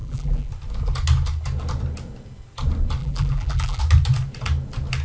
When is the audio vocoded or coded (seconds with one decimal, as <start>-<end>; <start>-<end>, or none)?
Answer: 0.0-0.5; 3.0-3.8